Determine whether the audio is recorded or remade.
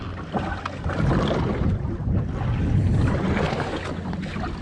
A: recorded